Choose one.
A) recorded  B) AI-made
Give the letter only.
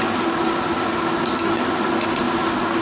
A